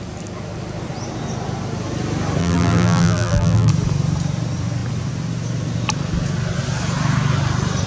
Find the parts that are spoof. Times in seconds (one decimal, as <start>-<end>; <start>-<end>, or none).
2.4-3.7